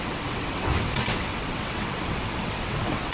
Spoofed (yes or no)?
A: yes